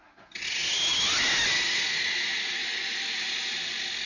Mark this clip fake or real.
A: real